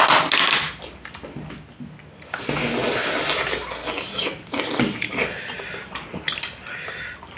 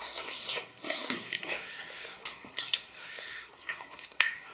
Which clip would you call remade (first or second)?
second